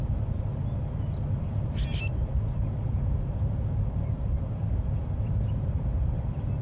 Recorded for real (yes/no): yes